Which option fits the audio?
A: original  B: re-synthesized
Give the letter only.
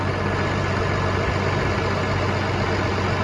A